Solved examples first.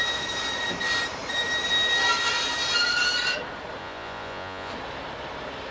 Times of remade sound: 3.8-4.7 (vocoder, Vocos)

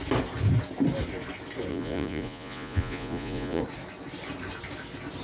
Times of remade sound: 1.7-3.6 (vocoder, Vocos)

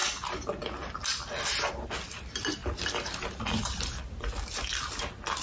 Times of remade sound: 2.6-4.0 (vocoder, BigVGAN v2)